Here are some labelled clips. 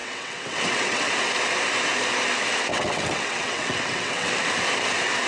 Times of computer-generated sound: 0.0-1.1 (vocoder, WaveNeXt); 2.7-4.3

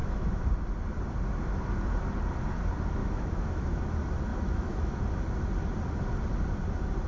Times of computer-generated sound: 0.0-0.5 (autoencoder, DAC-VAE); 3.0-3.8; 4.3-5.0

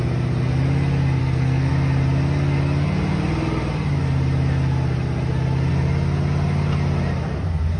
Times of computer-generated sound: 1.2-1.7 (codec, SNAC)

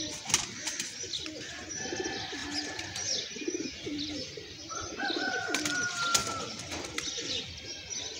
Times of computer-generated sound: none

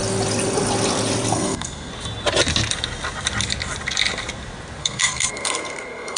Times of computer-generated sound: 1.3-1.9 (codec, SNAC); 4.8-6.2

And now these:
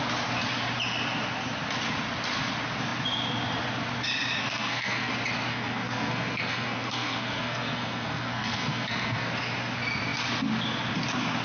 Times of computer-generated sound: 4.4-5.1 (codec, SNAC); 5.5-9.3